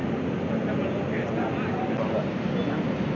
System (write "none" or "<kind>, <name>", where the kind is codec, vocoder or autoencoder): none